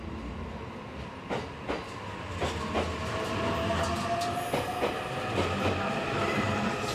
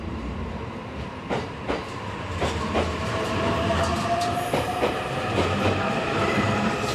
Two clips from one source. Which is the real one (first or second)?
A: first